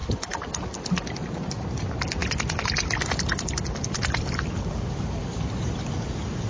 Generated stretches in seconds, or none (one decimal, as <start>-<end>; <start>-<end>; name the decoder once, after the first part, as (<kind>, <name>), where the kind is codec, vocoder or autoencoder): none